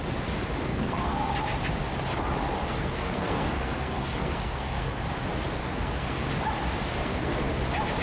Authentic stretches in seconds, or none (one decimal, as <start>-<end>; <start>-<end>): 0.0-0.7; 1.3-2.6; 5.0-5.6; 6.3-7.0; 7.5-8.0